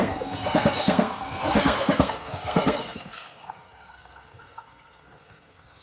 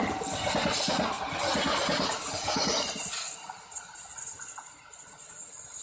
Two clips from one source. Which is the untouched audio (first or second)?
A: second